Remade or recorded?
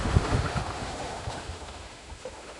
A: remade